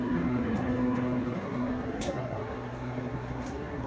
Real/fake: fake